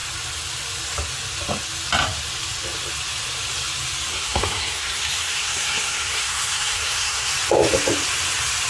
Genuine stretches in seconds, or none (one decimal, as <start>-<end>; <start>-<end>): 0.0-4.1; 7.3-8.7